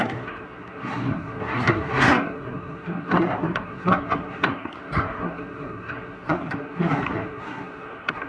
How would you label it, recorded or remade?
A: remade